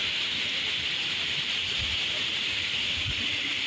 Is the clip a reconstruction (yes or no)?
yes